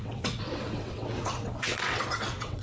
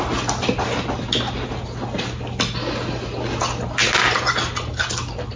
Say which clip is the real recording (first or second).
second